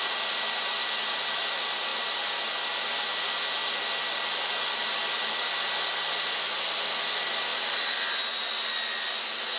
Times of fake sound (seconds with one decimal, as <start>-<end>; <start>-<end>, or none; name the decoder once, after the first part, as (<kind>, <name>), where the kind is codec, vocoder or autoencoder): none